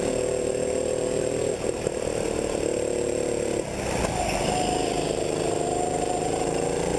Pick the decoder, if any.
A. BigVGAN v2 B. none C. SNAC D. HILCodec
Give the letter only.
B